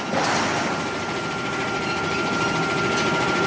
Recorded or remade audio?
recorded